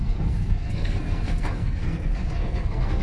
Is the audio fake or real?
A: fake